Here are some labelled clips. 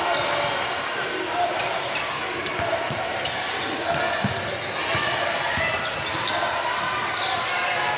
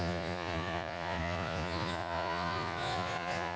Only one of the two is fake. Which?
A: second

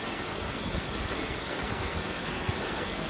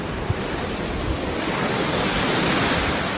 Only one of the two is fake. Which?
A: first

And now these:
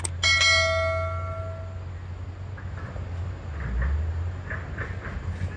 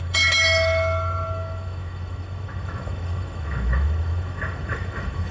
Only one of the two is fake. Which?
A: second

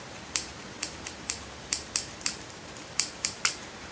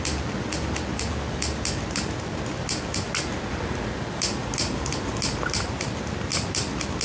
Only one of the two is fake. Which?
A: first